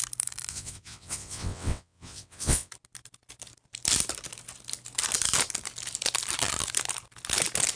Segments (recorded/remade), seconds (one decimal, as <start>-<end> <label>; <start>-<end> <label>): 0.0-0.5 recorded; 0.5-2.7 remade; 2.7-7.8 recorded